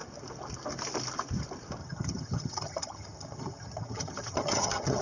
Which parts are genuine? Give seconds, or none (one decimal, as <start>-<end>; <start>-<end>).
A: 0.0-1.8